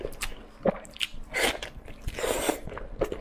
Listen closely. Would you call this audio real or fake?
real